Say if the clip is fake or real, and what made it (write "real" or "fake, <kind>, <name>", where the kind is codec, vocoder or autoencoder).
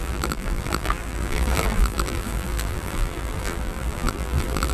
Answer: fake, vocoder, BigVGAN v2